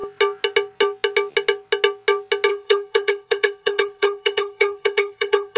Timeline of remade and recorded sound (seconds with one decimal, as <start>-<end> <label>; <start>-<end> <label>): 0.0-2.5 recorded; 2.5-5.6 remade